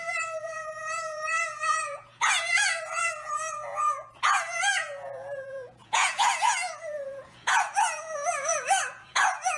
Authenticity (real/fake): fake